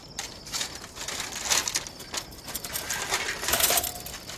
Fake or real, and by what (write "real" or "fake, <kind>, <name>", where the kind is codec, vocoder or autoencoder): real